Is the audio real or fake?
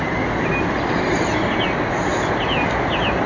real